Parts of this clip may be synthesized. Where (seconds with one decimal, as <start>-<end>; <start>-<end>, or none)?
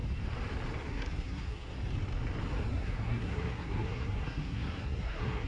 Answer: 0.9-1.7; 2.7-5.5